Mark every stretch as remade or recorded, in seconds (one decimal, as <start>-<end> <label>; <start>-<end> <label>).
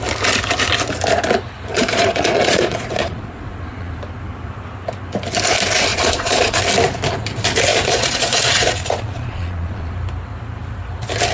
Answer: 0.0-1.7 recorded; 1.7-3.9 remade; 3.9-5.9 recorded; 5.9-6.6 remade; 6.6-7.7 recorded; 7.7-9.9 remade; 9.9-11.3 recorded